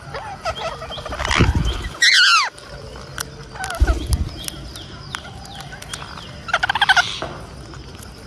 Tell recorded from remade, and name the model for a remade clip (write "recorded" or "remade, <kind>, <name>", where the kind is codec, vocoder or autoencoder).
recorded